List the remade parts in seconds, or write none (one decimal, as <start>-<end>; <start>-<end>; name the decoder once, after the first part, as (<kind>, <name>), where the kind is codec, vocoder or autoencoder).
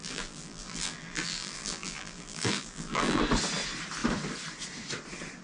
0.0-3.2 (vocoder, BigVGAN v2)